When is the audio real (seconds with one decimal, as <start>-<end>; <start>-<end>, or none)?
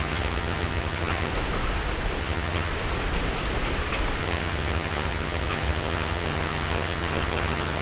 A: 1.3-2.2; 2.7-4.2